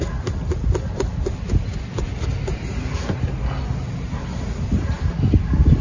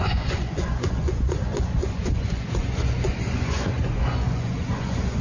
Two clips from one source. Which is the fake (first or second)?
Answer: second